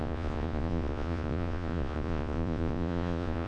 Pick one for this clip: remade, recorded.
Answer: remade